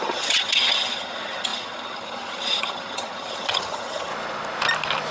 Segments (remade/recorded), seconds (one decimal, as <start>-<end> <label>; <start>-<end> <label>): 0.0-4.1 remade; 4.1-5.1 recorded